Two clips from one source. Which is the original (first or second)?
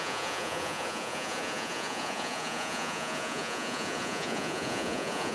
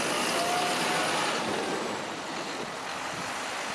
second